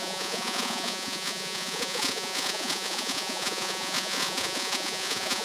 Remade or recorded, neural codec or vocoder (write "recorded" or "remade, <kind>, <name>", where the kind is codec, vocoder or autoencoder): remade, vocoder, Vocos